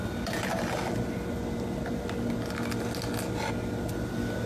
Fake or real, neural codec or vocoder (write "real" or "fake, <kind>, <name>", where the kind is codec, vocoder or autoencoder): real